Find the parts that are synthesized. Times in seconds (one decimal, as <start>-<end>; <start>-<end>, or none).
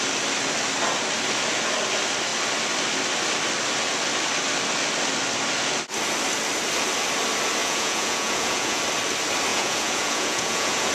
7.6-8.8; 9.5-10.9